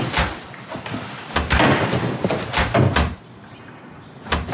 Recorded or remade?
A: recorded